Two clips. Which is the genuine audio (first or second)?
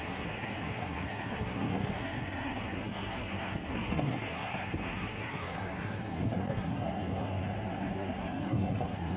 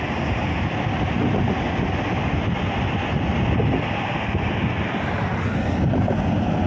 second